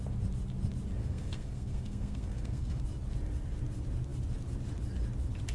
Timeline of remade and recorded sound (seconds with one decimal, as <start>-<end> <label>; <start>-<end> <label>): 0.0-1.0 recorded; 1.0-2.8 remade; 2.8-5.5 recorded